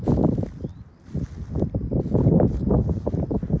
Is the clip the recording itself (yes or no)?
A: yes